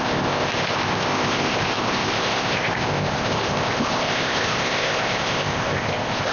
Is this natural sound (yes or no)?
no